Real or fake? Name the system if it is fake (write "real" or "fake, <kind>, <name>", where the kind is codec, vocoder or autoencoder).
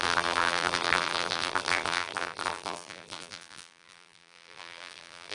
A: fake, vocoder, BigVGAN v2